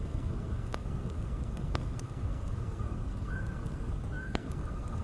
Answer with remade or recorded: remade